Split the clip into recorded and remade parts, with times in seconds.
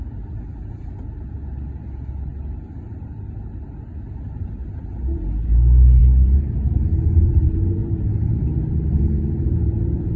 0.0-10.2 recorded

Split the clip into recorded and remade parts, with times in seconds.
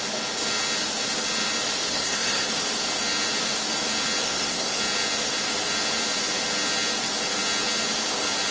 0.0-1.9 recorded; 1.9-2.5 remade; 2.5-4.2 recorded; 4.2-4.8 remade; 4.8-8.5 recorded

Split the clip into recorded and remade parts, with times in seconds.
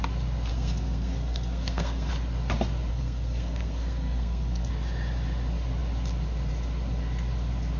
0.0-0.5 recorded; 0.5-2.1 remade; 2.1-2.9 recorded; 2.9-4.7 remade; 4.7-7.8 recorded